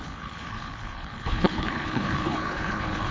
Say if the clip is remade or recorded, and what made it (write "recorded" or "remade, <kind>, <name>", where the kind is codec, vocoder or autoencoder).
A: remade, codec, HILCodec